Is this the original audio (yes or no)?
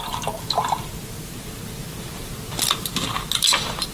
yes